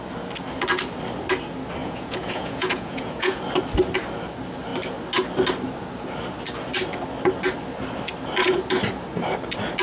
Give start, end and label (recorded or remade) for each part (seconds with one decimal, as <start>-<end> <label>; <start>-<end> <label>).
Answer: 0.0-1.8 recorded; 1.8-3.4 remade; 3.4-9.8 recorded